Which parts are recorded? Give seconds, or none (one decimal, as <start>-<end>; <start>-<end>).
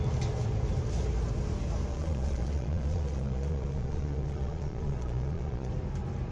0.0-1.9; 5.7-6.3